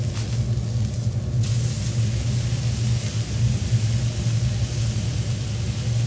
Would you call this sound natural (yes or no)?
yes